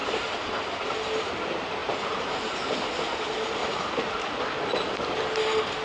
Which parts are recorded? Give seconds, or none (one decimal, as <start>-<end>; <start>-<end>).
0.6-1.8; 3.2-3.6; 4.4-5.8